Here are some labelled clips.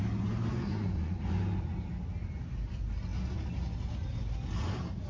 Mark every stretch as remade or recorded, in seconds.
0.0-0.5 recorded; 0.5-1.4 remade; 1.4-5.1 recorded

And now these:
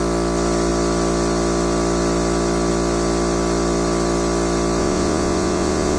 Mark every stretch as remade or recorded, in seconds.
0.0-4.8 recorded; 4.8-6.0 remade